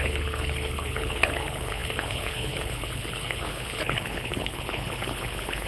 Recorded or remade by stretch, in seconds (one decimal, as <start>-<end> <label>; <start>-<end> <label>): 0.0-5.7 remade